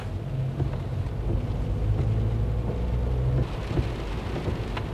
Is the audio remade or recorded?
recorded